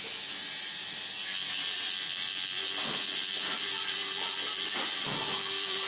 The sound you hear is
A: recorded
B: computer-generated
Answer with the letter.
B